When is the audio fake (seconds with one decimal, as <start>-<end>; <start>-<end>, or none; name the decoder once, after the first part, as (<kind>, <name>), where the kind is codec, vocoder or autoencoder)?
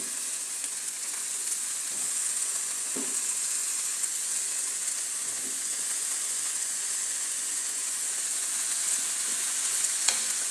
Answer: 0.0-10.5 (vocoder, Vocos)